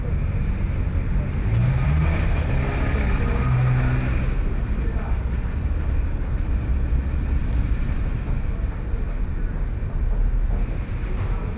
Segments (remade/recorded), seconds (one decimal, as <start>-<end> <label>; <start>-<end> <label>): 0.0-1.6 recorded; 1.6-3.3 remade; 3.3-7.4 recorded; 7.4-8.1 remade; 8.1-11.6 recorded